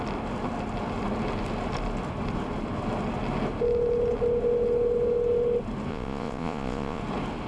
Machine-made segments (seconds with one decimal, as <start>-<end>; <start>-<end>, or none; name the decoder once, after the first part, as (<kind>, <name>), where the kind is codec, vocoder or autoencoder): 5.9-7.0 (vocoder, Vocos)